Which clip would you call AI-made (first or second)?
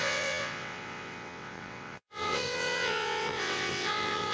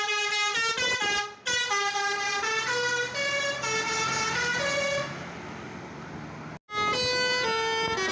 first